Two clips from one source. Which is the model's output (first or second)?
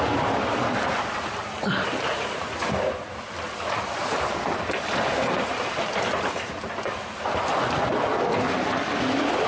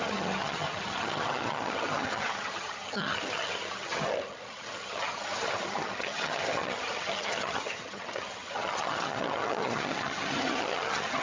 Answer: second